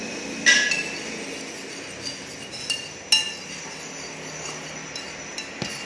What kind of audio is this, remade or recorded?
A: recorded